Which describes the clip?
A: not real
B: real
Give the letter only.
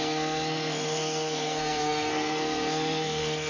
A